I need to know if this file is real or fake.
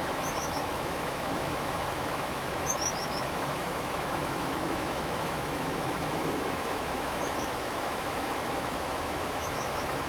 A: fake